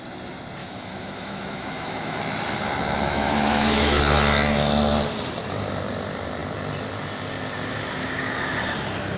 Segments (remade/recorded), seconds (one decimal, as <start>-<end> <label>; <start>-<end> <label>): 0.0-0.6 recorded; 0.6-2.2 remade; 2.2-3.1 recorded; 3.1-4.0 remade; 4.0-9.2 recorded